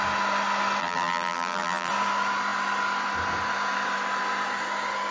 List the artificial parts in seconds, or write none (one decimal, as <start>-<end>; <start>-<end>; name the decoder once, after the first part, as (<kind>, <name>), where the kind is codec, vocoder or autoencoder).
0.8-1.9 (vocoder, BigVGAN v2)